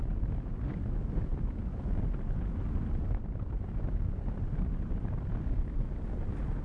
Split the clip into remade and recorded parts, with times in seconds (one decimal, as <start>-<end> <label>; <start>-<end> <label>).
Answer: 0.0-6.6 recorded

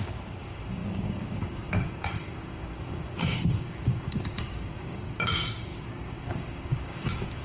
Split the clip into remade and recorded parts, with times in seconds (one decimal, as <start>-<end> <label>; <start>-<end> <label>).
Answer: 0.0-7.4 remade

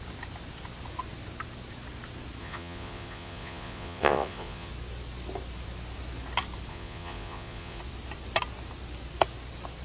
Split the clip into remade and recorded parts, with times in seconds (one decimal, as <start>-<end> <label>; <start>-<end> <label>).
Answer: 0.0-2.4 recorded; 2.4-4.7 remade; 4.7-6.7 recorded; 6.7-7.8 remade; 7.8-9.8 recorded

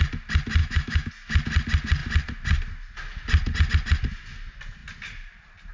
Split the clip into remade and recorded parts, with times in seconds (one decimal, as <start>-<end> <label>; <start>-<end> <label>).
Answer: 0.0-0.6 recorded; 0.6-1.1 remade; 1.1-5.7 recorded